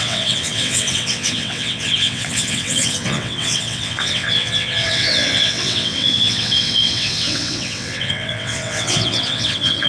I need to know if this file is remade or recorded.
remade